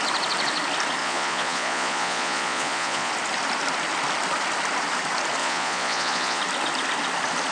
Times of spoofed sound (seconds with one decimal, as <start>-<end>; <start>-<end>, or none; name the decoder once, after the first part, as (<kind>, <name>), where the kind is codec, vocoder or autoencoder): 1.0-3.1 (vocoder, Vocos); 5.4-6.4